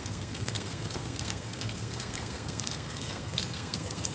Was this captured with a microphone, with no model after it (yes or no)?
no